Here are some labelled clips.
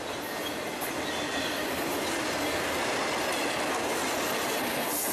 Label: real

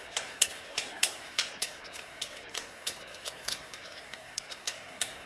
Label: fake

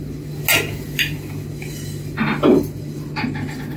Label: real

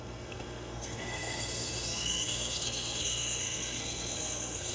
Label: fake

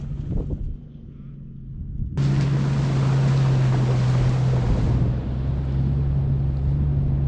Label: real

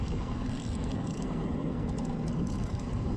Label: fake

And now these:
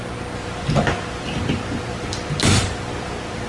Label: real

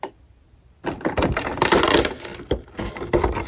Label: real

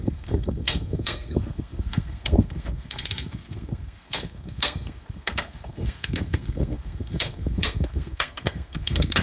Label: fake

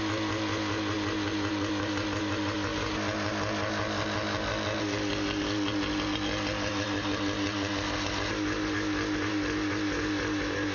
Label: real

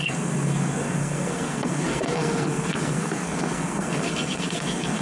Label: fake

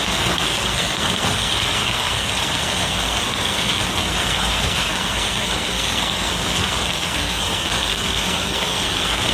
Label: fake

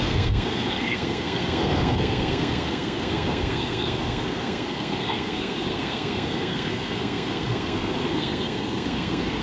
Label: fake